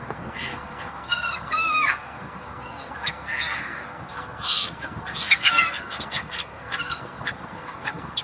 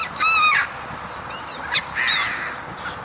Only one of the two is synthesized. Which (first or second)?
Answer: first